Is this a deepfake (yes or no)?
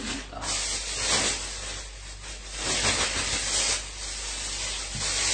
no